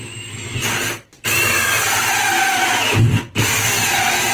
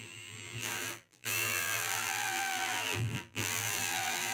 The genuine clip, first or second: first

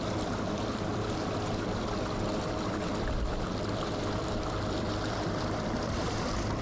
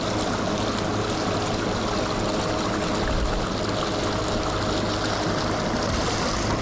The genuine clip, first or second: second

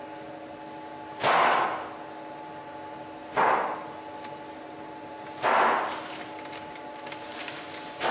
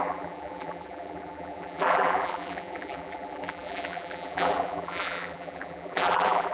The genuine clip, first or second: first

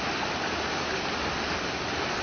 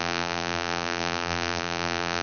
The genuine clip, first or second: first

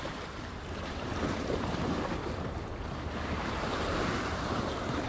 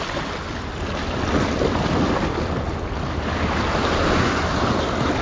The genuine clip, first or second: second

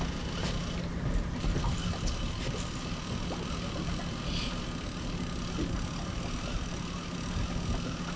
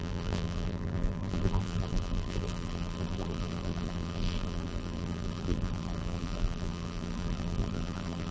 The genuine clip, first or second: first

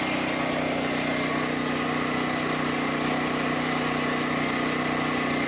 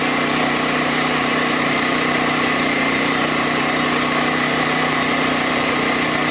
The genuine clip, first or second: first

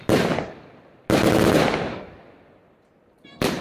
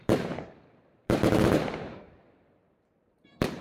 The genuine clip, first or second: first